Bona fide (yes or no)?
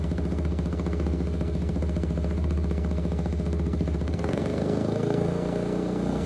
no